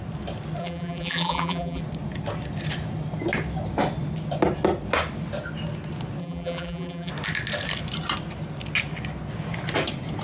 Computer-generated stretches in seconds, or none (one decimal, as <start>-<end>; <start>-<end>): 0.6-1.8; 6.2-7.1